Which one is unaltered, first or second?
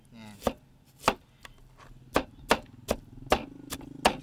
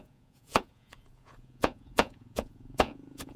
first